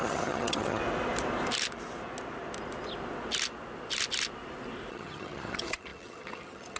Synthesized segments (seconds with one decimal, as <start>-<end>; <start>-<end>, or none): 0.0-0.8; 4.9-6.8